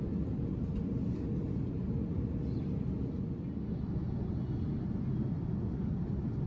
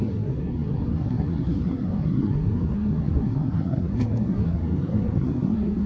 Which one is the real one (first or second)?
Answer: first